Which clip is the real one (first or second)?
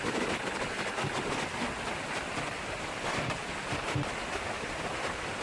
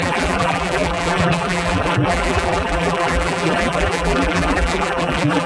first